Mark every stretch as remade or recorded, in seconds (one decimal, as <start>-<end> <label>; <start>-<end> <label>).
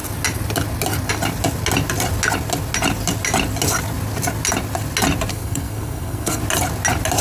0.0-5.3 recorded; 5.3-6.4 remade; 6.4-7.2 recorded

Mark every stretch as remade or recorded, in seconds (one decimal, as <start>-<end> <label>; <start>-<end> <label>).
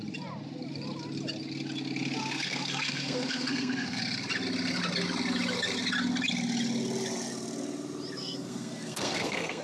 0.0-2.2 recorded; 2.2-4.0 remade; 4.0-8.2 recorded; 8.2-9.6 remade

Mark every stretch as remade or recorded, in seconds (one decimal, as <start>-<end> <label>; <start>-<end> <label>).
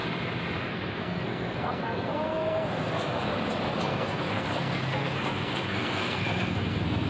0.0-0.6 recorded; 0.6-3.3 remade; 3.3-3.8 recorded; 3.8-7.1 remade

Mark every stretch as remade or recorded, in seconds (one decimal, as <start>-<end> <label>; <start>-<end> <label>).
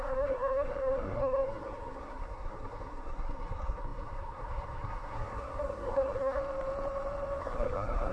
0.0-6.4 remade; 6.4-7.4 recorded; 7.4-8.1 remade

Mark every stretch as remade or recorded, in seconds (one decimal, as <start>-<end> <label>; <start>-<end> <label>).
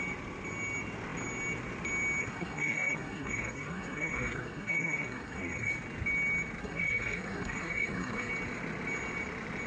0.0-2.2 recorded; 2.2-5.7 remade; 5.7-6.6 recorded; 6.6-8.3 remade; 8.3-9.7 recorded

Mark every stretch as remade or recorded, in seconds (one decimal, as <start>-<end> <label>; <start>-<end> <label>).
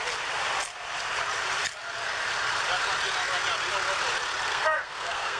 0.0-4.5 recorded; 4.5-5.4 remade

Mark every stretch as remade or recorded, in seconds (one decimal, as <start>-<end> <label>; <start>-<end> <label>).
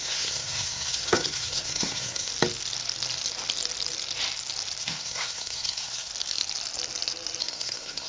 0.0-2.3 remade; 2.3-4.8 recorded; 4.8-6.1 remade; 6.1-7.4 recorded; 7.4-8.1 remade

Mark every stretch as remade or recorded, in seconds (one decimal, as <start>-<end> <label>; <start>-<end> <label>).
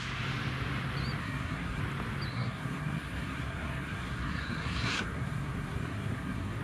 0.0-1.2 recorded; 1.2-1.8 remade; 1.8-2.3 recorded; 2.3-6.6 remade